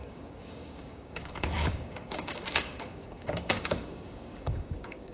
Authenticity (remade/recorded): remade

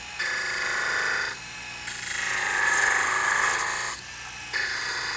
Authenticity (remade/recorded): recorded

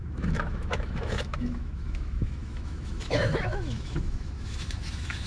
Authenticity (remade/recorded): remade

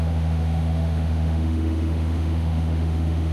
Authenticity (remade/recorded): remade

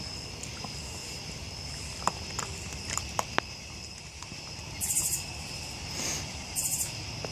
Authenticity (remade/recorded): recorded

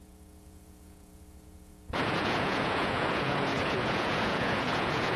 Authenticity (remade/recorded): remade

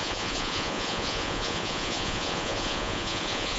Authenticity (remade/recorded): remade